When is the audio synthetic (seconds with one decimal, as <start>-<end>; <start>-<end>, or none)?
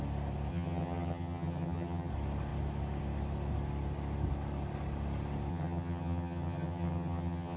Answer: 0.5-2.1; 5.5-7.6